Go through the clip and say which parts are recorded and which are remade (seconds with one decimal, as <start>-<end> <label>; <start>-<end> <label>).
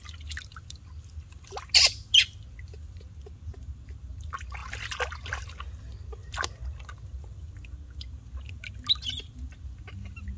0.0-10.4 recorded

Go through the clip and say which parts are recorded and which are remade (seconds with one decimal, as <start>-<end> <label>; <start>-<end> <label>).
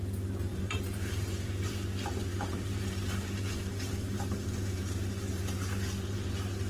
0.0-0.5 recorded; 0.5-1.8 remade; 1.8-2.3 recorded; 2.3-6.3 remade; 6.3-6.7 recorded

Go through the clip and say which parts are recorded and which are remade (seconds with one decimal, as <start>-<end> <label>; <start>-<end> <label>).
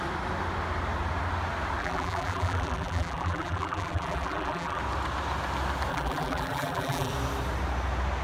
0.0-1.8 recorded; 1.8-4.8 remade; 4.8-5.9 recorded; 5.9-7.1 remade; 7.1-8.2 recorded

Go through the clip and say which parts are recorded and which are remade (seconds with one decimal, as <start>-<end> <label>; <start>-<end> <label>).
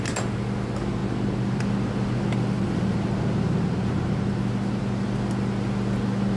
0.0-6.4 recorded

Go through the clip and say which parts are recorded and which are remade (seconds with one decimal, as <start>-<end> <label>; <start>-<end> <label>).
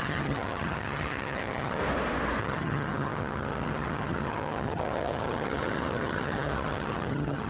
0.0-1.8 remade; 1.8-2.4 recorded; 2.4-7.5 remade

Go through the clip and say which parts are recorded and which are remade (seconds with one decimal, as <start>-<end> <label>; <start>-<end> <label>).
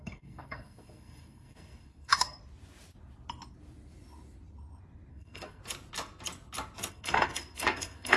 0.0-2.4 remade; 2.4-5.1 recorded; 5.1-5.6 remade; 5.6-6.9 recorded; 6.9-8.2 remade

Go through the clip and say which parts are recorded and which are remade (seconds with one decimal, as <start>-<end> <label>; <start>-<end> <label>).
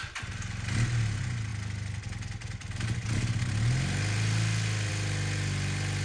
0.0-6.0 recorded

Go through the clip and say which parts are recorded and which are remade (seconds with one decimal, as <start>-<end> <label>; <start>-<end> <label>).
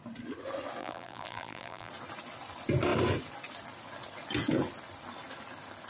0.0-0.8 recorded; 0.8-1.9 remade; 1.9-5.9 recorded